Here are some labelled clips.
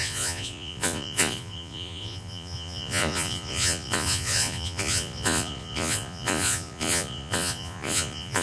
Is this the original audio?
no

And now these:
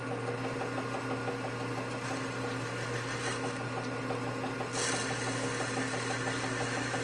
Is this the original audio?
yes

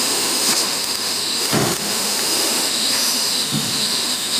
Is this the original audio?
no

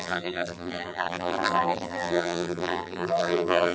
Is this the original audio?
no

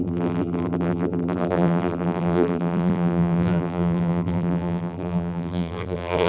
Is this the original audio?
no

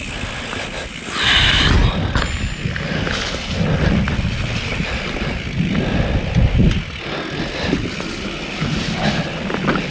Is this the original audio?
yes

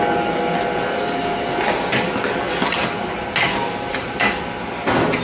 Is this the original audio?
yes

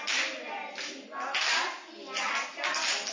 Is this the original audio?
yes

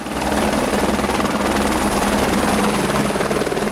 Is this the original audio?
yes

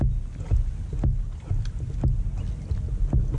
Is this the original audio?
yes